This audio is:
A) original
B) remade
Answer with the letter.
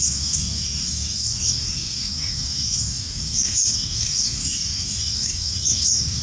B